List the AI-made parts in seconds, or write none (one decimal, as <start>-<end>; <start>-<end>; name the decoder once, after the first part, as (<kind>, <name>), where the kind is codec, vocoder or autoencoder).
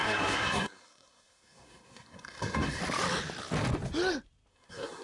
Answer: 0.0-2.8 (codec, SNAC); 4.5-5.0